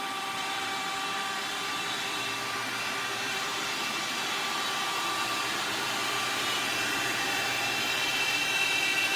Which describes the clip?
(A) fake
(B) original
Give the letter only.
A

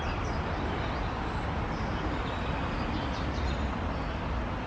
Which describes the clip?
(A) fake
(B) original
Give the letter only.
B